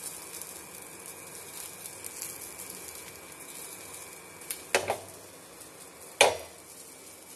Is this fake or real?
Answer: real